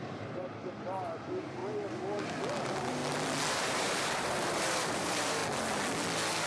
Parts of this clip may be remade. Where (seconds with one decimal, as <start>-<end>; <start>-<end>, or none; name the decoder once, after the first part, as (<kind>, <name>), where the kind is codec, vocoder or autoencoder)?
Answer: 0.0-1.6 (vocoder, BigVGAN v2); 2.2-3.0; 3.5-5.4